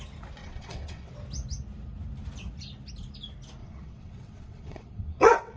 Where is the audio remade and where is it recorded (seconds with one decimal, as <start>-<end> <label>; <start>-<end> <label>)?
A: 0.0-0.4 recorded; 0.4-1.1 remade; 1.1-3.6 recorded; 3.6-5.6 remade